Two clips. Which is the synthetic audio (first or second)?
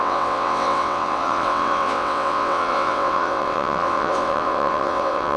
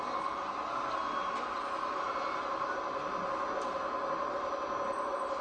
first